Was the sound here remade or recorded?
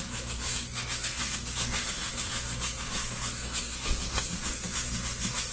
remade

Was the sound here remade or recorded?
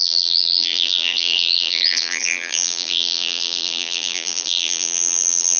remade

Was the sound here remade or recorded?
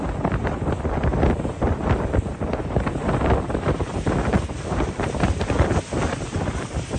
recorded